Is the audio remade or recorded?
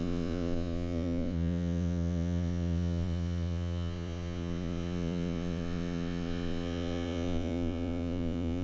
remade